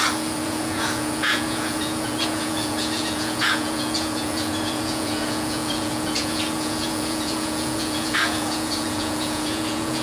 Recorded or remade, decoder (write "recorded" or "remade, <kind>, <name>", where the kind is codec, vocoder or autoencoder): remade, vocoder, Vocos